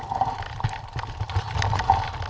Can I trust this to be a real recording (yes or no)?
yes